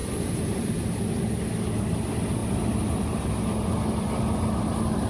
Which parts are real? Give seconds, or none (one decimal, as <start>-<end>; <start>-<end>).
0.7-5.1